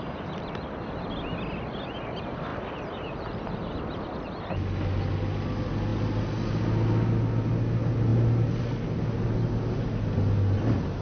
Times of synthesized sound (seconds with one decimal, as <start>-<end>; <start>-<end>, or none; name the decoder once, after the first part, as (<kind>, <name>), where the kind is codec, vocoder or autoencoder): none